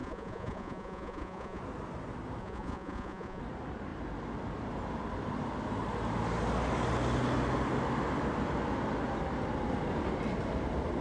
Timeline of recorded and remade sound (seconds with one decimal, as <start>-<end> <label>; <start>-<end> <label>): 0.0-1.6 remade; 1.6-2.4 recorded; 2.4-3.4 remade; 3.4-11.0 recorded